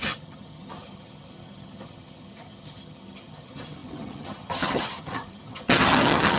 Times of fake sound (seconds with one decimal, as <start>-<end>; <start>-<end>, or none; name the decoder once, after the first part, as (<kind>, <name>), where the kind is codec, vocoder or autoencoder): 0.0-6.4 (vocoder, HiFi-GAN)